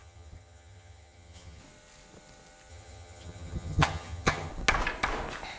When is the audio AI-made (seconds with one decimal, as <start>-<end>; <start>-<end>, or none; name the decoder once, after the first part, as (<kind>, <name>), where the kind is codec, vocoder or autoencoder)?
0.0-1.6 (vocoder, HiFi-GAN); 2.7-4.5